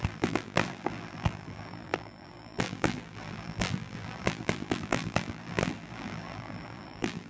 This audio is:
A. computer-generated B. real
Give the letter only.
A